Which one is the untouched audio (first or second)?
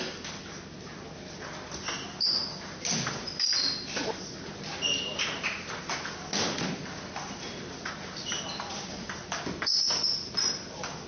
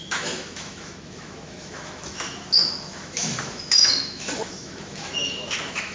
first